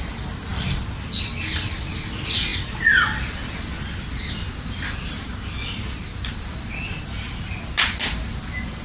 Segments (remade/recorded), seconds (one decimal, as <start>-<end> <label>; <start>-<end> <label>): 0.0-8.8 recorded